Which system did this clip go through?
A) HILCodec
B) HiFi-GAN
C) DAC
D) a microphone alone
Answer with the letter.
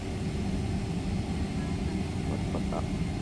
D